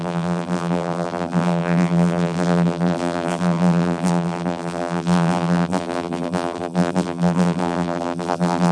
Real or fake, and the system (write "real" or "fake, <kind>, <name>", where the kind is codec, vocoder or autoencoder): fake, vocoder, BigVGAN v2